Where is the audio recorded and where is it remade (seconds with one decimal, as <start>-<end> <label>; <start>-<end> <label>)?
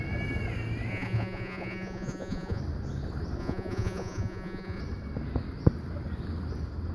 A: 0.0-0.9 recorded; 0.9-2.6 remade; 2.6-3.4 recorded; 3.4-4.8 remade; 4.8-6.9 recorded